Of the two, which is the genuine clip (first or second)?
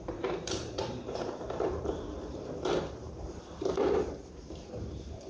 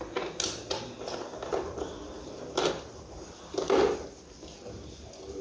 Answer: second